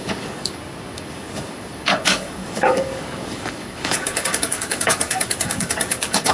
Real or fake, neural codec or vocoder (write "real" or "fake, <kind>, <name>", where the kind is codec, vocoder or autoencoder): fake, codec, DAC